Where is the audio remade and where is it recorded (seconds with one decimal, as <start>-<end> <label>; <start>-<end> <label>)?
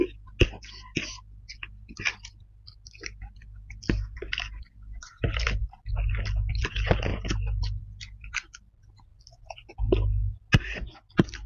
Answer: 0.0-11.5 recorded